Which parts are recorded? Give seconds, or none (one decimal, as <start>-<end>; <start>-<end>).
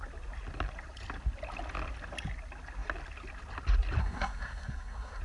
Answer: 0.0-4.0